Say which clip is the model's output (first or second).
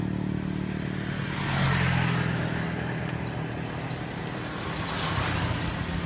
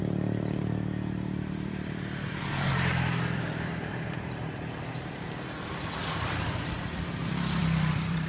second